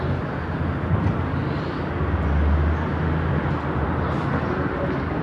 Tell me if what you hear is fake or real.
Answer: real